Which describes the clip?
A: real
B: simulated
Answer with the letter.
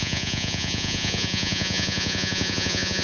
B